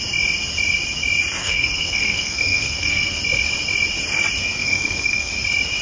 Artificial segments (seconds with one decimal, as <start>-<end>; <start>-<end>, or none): 1.4-3.2; 4.4-5.3